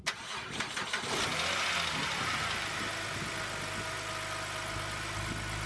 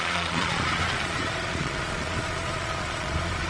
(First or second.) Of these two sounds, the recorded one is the first